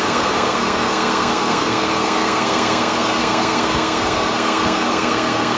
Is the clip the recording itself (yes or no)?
no